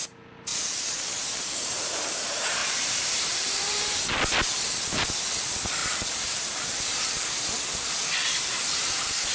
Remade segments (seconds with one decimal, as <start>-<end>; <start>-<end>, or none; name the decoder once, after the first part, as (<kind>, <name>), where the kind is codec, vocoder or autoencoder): 0.5-2.0 (vocoder, BigVGAN v2); 2.6-4.2; 5.8-7.3; 8.2-9.3